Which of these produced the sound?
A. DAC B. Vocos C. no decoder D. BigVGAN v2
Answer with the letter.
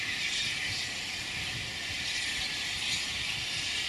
C